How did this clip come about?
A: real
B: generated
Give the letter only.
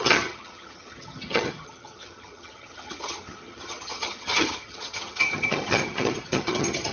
B